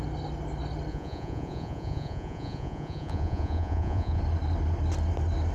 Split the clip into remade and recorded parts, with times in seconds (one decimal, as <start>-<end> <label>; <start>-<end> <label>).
0.0-0.9 recorded; 0.9-4.2 remade; 4.2-5.5 recorded